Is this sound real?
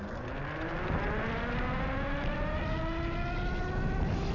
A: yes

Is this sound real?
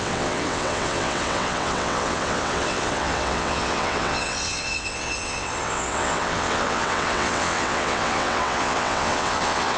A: no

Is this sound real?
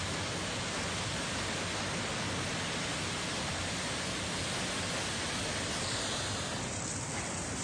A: yes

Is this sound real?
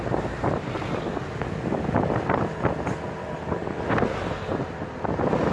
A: yes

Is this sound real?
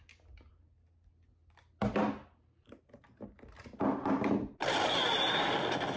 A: yes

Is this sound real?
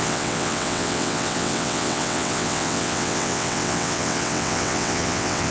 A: no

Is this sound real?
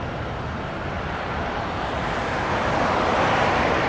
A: yes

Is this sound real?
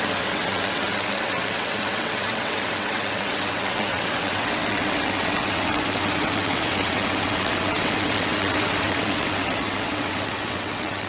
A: no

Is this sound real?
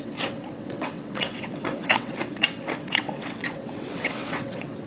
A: no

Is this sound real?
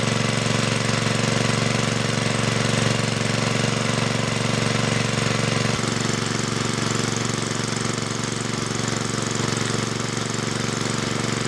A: yes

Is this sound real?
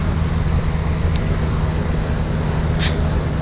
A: yes